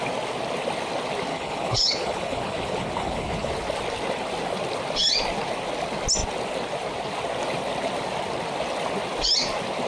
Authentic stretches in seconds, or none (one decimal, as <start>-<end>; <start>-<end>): 0.0-1.3; 3.5-9.9